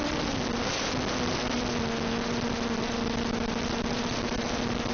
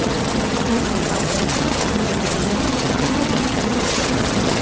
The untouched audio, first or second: first